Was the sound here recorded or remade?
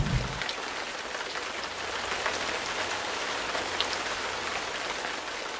recorded